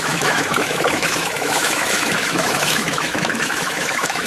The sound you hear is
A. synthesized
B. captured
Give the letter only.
A